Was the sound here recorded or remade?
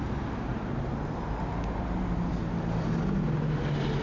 recorded